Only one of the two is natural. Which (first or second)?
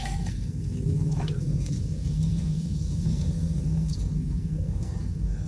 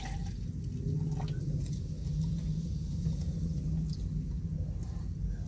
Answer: second